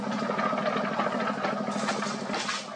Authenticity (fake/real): real